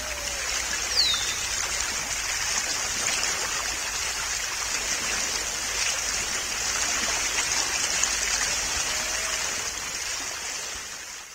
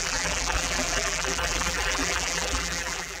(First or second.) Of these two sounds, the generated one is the second